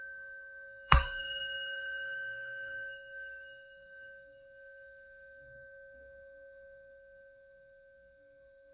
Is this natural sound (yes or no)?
no